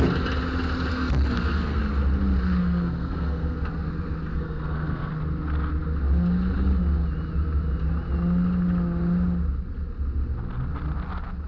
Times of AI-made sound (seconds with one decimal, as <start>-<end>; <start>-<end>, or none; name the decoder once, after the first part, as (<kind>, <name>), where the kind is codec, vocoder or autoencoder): 0.9-1.8 (codec, SNAC); 2.6-3.7; 4.3-5.1

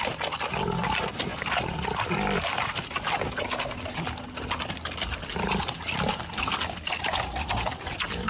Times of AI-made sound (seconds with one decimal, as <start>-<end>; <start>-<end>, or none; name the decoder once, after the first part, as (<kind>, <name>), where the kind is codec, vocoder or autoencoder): none

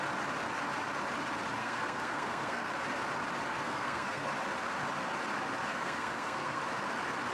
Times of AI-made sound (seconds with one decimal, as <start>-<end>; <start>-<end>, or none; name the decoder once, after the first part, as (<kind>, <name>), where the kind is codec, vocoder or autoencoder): 1.6-2.7 (codec, SNAC); 3.5-4.3; 5.7-6.6